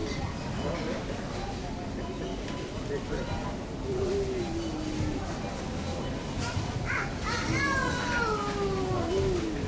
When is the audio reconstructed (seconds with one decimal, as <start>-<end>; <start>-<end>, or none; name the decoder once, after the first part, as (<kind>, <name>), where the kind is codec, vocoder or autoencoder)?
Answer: none